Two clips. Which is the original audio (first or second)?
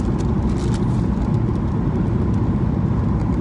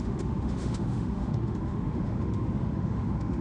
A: first